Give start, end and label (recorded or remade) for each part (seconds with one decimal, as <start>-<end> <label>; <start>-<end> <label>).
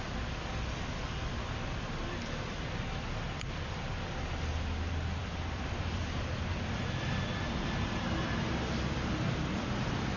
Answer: 0.0-10.2 recorded